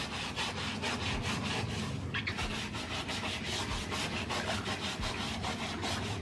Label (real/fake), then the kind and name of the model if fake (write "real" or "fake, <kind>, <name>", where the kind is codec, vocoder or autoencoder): real